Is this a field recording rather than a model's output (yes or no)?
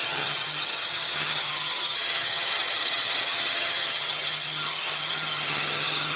no